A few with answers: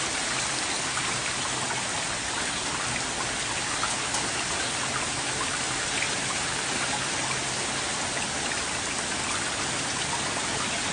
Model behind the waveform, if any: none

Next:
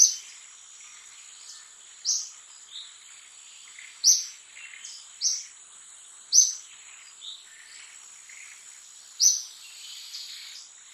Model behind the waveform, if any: none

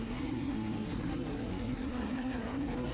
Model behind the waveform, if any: codec, SNAC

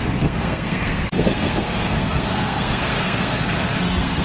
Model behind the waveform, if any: codec, SNAC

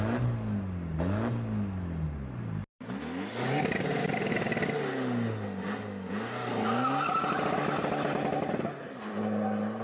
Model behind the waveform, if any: none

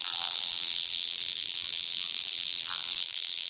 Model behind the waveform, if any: vocoder, BigVGAN v2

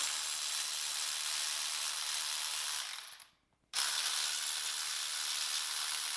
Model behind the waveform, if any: none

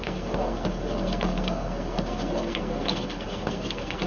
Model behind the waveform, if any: codec, SNAC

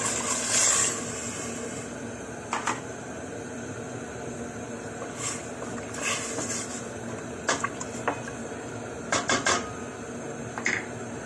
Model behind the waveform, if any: none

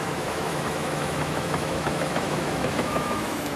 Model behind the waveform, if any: autoencoder, DAC-VAE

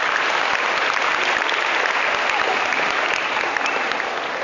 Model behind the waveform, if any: none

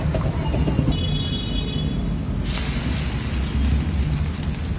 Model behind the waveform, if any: none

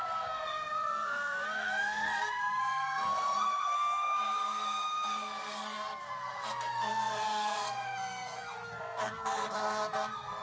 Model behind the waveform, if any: codec, SNAC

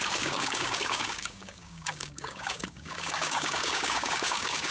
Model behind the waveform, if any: codec, DAC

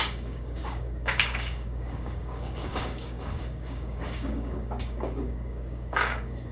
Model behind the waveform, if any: codec, DAC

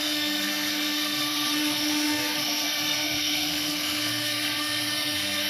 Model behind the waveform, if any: codec, SNAC